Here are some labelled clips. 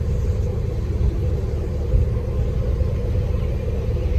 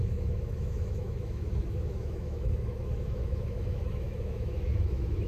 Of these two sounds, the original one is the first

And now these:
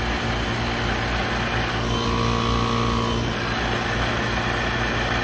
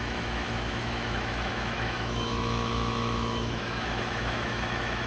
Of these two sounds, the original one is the first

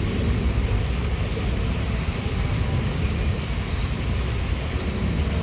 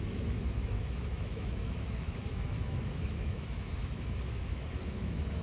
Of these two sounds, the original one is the first